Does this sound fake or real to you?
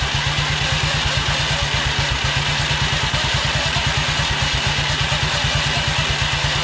real